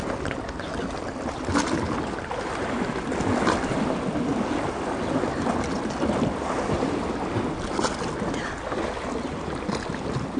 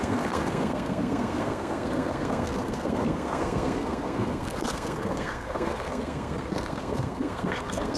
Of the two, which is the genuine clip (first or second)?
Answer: first